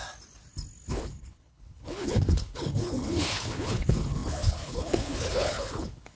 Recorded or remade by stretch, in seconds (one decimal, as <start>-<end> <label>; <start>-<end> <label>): 0.0-0.9 recorded; 0.9-6.2 remade